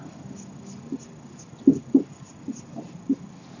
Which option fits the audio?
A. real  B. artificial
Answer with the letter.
A